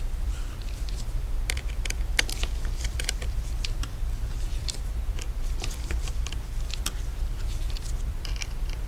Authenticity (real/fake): fake